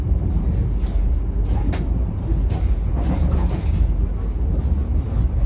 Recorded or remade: recorded